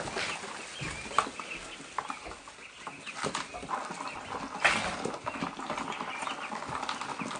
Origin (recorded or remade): recorded